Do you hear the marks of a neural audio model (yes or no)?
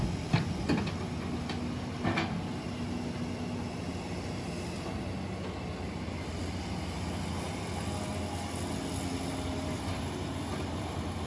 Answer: no